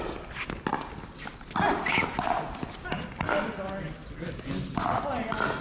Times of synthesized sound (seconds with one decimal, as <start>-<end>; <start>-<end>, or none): none